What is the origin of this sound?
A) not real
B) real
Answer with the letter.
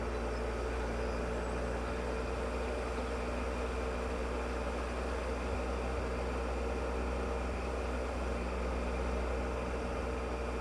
B